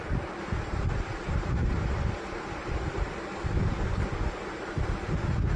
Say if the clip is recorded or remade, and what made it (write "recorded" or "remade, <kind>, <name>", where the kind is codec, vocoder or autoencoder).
recorded